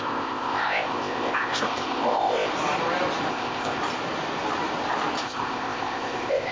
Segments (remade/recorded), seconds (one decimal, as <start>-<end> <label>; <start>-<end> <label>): 0.0-2.5 remade; 2.5-3.3 recorded; 3.3-3.8 remade; 3.8-5.2 recorded; 5.2-6.5 remade